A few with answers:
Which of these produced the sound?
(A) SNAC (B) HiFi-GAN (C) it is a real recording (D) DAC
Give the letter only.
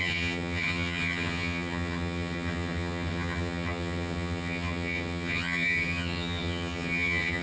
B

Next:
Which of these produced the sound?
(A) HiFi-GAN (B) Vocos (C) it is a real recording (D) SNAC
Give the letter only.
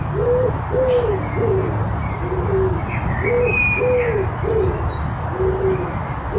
C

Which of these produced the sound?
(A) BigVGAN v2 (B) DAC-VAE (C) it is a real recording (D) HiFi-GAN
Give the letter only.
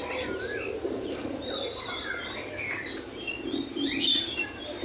C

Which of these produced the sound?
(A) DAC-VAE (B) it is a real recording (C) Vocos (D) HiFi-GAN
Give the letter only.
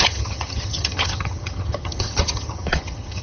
D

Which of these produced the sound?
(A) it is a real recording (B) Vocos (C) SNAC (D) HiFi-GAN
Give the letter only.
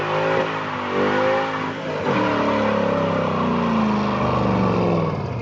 A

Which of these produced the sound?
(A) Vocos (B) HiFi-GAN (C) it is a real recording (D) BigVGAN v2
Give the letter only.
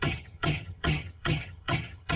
B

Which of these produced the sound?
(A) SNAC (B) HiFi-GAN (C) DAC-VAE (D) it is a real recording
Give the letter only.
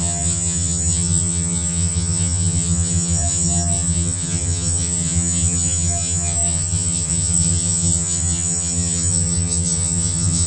B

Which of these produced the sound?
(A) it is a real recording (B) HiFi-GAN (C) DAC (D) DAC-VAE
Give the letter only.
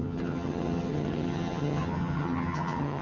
B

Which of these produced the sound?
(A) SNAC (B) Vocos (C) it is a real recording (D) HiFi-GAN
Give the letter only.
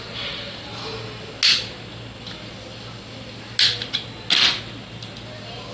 C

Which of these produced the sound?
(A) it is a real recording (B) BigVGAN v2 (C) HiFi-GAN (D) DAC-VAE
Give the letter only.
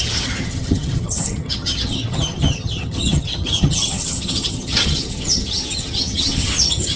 C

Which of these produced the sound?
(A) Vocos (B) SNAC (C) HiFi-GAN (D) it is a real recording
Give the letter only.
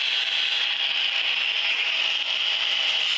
D